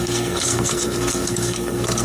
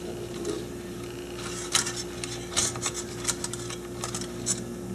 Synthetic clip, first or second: first